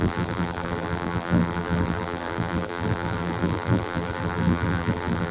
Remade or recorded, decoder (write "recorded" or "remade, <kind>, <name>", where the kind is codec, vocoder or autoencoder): remade, vocoder, BigVGAN v2